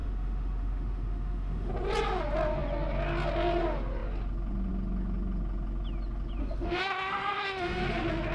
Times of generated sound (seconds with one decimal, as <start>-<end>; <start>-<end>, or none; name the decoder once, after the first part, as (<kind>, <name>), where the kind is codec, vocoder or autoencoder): 0.0-1.7 (autoencoder, DAC-VAE); 6.4-7.8